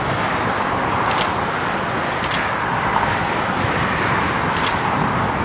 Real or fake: real